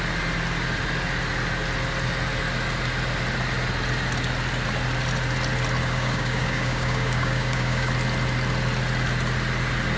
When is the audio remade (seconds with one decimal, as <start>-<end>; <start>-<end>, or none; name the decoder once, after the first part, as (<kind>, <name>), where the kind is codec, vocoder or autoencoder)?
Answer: 5.8-7.9 (codec, DAC)